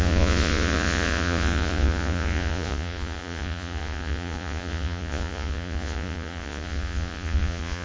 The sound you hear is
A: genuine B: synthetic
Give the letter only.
B